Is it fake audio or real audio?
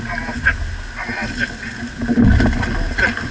real